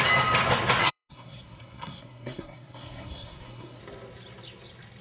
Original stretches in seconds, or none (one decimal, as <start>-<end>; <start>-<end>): 0.0-0.8; 3.8-5.0

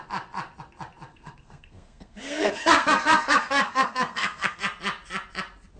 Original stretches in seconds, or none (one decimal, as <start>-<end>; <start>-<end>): 0.0-1.1; 4.6-5.8

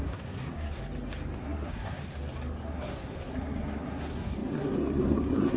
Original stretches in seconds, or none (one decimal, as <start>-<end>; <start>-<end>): 0.8-1.4; 2.2-2.7

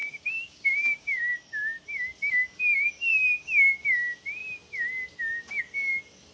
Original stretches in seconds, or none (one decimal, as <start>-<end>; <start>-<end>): 1.2-3.1; 3.7-6.3

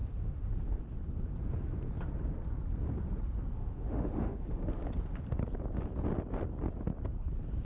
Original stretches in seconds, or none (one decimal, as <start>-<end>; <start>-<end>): 0.8-3.5; 4.9-7.6

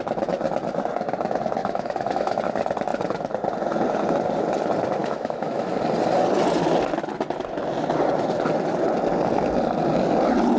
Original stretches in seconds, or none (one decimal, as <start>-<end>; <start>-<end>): 0.0-1.6; 2.4-5.0; 5.7-10.6